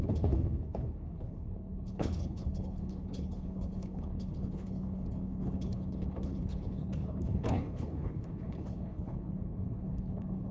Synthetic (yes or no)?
yes